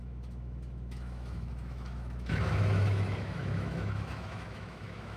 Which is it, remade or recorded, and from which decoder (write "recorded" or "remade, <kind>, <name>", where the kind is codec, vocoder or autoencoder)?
remade, autoencoder, DAC-VAE